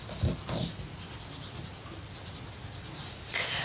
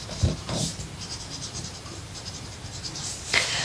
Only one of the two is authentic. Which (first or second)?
first